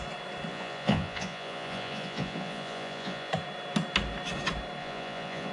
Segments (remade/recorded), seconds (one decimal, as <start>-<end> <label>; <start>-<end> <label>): 0.0-0.5 recorded; 0.5-3.3 remade; 3.3-4.8 recorded; 4.8-5.5 remade

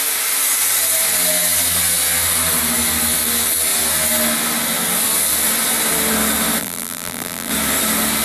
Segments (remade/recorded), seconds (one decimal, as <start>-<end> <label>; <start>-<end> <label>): 0.0-6.6 recorded; 6.6-7.5 remade; 7.5-8.2 recorded

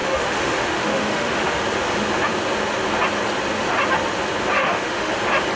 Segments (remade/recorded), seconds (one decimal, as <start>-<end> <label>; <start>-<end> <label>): 0.0-1.6 remade; 1.6-4.6 recorded; 4.6-5.1 remade; 5.1-5.6 recorded

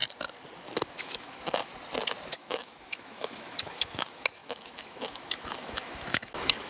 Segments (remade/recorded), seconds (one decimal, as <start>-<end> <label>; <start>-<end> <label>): 0.0-0.9 recorded; 0.9-1.7 remade; 1.7-2.3 recorded; 2.3-6.7 remade